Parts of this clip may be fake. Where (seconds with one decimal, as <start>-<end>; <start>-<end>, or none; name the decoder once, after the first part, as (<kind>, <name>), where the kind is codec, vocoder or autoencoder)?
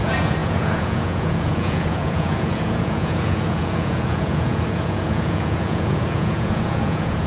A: 0.0-7.3 (vocoder, Vocos)